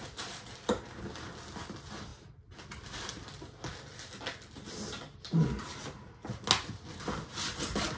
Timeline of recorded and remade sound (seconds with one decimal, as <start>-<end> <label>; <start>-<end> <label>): 0.0-8.0 recorded